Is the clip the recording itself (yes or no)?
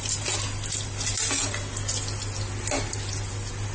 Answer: yes